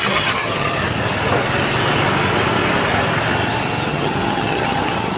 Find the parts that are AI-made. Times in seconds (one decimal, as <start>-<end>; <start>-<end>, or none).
0.0-0.8; 3.9-5.2